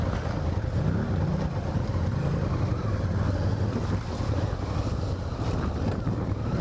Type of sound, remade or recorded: recorded